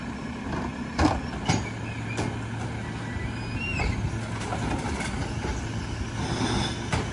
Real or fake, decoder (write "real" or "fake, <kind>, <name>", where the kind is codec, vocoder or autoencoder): real